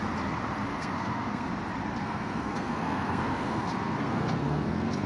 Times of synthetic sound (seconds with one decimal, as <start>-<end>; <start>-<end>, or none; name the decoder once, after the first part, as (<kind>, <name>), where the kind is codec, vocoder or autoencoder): 0.7-1.5 (codec, SNAC); 2.0-5.1